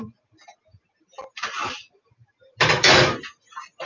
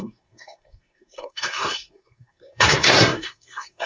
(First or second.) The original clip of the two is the first